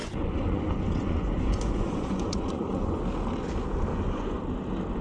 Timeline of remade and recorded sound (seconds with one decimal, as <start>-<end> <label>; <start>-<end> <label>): 0.0-3.0 remade; 3.0-3.9 recorded; 3.9-4.4 remade; 4.4-5.0 recorded